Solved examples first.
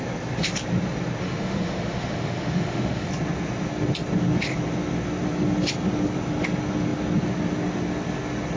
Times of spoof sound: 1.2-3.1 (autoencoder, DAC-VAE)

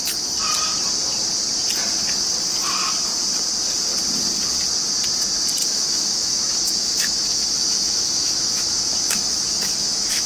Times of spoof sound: 5.6-10.3 (autoencoder, DAC-VAE)

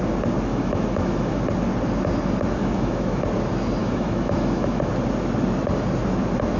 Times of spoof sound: 0.5-1.4 (autoencoder, DAC-VAE); 2.6-3.2; 3.8-4.9

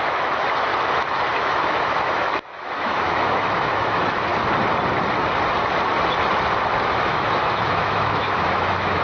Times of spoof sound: 0.0-0.7 (autoencoder, DAC-VAE); 1.3-4.3; 6.9-9.0